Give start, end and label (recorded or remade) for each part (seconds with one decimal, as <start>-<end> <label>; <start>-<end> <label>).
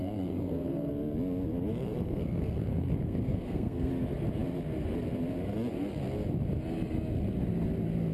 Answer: 0.0-0.9 remade; 0.9-1.7 recorded; 1.7-3.9 remade; 3.9-8.1 recorded